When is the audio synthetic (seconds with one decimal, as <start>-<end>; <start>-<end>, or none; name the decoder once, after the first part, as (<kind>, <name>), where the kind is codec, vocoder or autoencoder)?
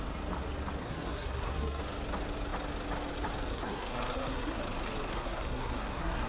0.8-1.8 (codec, SNAC); 3.5-4.6; 5.1-6.3